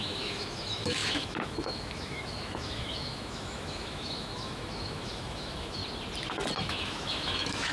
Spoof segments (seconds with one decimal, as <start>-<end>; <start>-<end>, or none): 0.0-5.8; 6.6-7.7